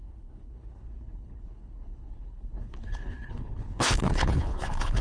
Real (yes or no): no